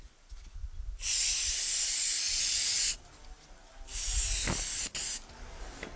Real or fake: real